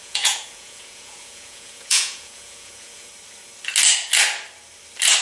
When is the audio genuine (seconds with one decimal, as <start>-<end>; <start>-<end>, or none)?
3.1-5.2